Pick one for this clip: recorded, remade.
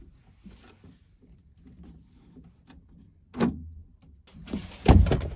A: recorded